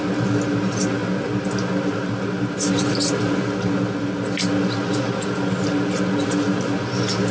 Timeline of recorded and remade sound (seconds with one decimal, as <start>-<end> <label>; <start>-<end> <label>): 0.0-7.3 recorded

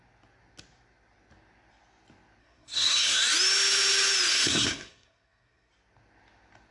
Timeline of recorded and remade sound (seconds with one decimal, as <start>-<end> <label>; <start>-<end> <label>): 0.0-2.4 recorded; 2.4-3.2 remade; 3.2-4.3 recorded; 4.3-5.7 remade; 5.7-6.7 recorded

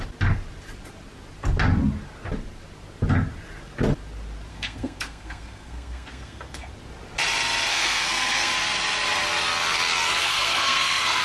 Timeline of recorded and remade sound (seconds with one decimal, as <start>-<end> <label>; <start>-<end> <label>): 0.0-4.5 recorded; 4.5-6.7 remade; 6.7-7.7 recorded; 7.7-8.5 remade; 8.5-10.2 recorded; 10.2-11.2 remade

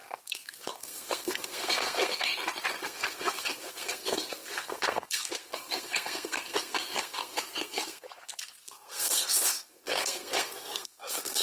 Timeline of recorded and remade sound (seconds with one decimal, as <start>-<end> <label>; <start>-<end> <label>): 0.0-2.3 remade; 2.3-2.8 recorded; 2.8-11.4 remade